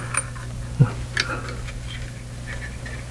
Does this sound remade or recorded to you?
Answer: recorded